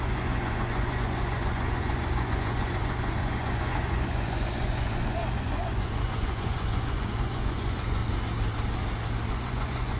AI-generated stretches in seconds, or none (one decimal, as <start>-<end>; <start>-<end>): 0.0-8.0; 9.3-10.0